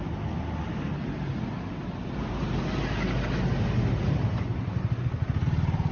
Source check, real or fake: real